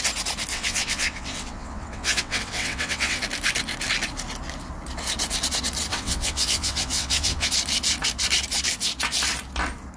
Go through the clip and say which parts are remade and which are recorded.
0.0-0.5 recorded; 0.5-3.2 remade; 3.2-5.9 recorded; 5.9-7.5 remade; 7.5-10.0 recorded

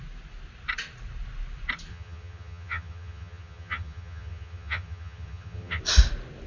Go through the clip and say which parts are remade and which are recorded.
0.0-1.9 recorded; 1.9-5.8 remade; 5.8-6.5 recorded